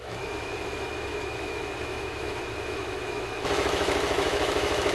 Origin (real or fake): fake